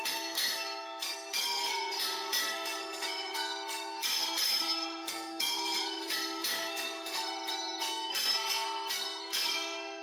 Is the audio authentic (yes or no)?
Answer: no